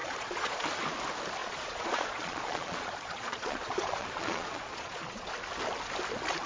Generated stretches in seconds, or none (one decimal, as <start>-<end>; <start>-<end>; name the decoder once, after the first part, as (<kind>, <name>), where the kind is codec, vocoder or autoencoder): 0.0-0.7 (vocoder, Vocos); 1.4-5.3